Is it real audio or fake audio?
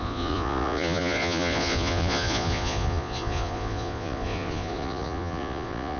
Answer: fake